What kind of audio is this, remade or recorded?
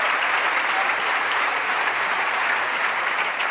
remade